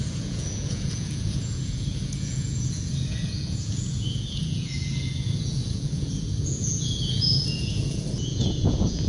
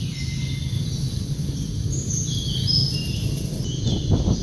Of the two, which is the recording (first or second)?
second